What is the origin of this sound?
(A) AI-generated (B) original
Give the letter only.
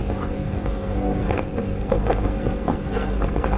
A